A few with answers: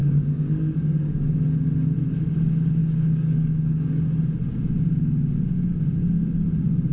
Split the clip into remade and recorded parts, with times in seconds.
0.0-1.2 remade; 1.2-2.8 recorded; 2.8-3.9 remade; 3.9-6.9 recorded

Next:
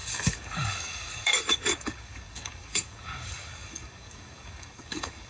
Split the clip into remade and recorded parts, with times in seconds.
0.0-5.3 remade

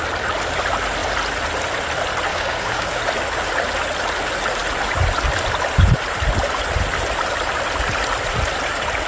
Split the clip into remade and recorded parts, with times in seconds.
0.0-2.3 recorded; 2.3-3.0 remade; 3.0-9.1 recorded

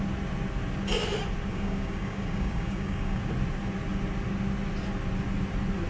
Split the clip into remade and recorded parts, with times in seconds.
0.0-1.5 recorded; 1.5-3.2 remade; 3.2-5.9 recorded

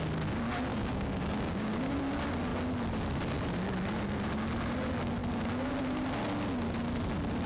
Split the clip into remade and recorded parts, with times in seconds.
0.0-0.7 recorded; 0.7-2.0 remade; 2.0-7.5 recorded

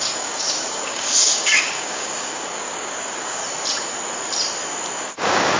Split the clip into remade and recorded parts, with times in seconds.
0.0-3.4 remade; 3.4-5.0 recorded; 5.0-5.6 remade

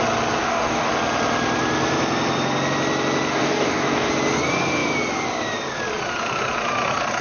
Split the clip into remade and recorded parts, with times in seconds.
0.0-0.4 recorded; 0.4-0.9 remade; 0.9-3.3 recorded; 3.3-4.1 remade; 4.1-7.2 recorded

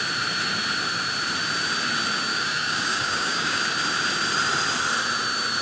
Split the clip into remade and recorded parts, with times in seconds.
0.0-2.3 recorded; 2.3-3.6 remade; 3.6-5.6 recorded